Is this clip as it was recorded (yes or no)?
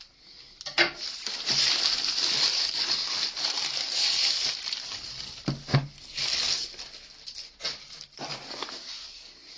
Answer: yes